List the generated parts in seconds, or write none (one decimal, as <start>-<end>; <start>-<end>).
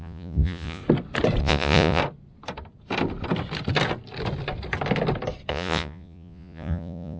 0.0-0.8; 1.4-2.0; 5.5-7.2